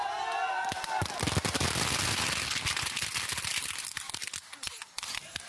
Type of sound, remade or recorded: recorded